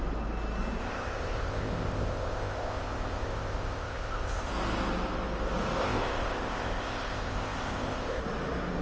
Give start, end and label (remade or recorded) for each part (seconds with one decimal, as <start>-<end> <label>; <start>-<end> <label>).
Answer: 0.0-0.8 recorded; 0.8-4.5 remade; 4.5-5.8 recorded; 5.8-8.2 remade; 8.2-8.8 recorded